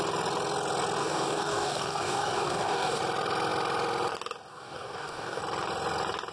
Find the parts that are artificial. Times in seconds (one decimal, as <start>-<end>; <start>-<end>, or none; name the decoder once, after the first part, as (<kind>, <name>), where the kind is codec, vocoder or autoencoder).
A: 1.0-3.0 (codec, DAC); 4.5-5.4